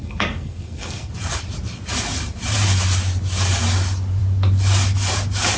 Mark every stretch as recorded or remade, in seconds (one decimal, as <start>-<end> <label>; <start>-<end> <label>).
0.0-1.1 remade; 1.1-5.6 recorded